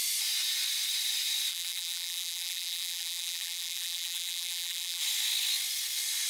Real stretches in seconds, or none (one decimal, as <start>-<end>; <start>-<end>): 0.0-1.5; 5.0-6.3